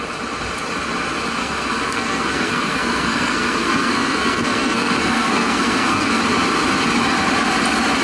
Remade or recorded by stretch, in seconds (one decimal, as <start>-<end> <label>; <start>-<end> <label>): 0.0-1.4 recorded; 1.4-6.2 remade; 6.2-8.0 recorded

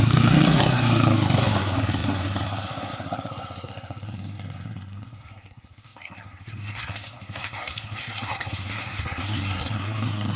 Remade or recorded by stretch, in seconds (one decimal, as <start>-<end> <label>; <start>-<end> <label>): 0.0-10.4 remade

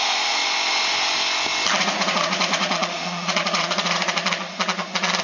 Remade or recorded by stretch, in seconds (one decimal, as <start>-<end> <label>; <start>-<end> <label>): 0.0-0.4 remade; 0.4-1.8 recorded; 1.8-4.2 remade; 4.2-5.2 recorded

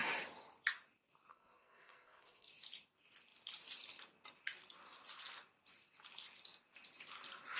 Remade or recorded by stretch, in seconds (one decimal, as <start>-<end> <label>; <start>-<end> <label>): 0.0-1.3 recorded; 1.3-2.5 remade; 2.5-7.6 recorded

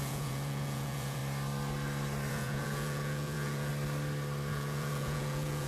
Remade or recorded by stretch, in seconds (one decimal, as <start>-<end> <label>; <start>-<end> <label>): 0.0-1.2 remade; 1.2-2.3 recorded; 2.3-3.7 remade; 3.7-4.5 recorded; 4.5-5.7 remade

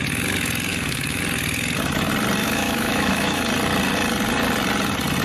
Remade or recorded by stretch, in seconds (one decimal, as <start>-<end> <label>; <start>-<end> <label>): 0.0-0.7 recorded; 0.7-1.2 remade; 1.2-2.4 recorded; 2.4-3.4 remade; 3.4-5.2 recorded

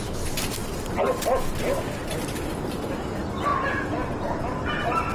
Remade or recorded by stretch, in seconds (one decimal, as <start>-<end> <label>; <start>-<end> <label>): 0.0-5.1 recorded